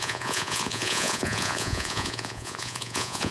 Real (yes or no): no